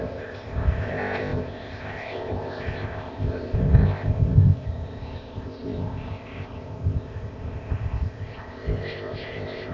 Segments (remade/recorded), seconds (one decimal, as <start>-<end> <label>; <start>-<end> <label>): 0.0-9.7 remade